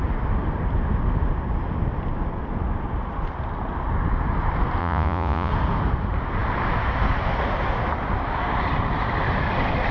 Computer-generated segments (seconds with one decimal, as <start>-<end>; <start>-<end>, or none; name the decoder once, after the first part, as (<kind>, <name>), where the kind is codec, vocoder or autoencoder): 4.8-5.5 (vocoder, Vocos)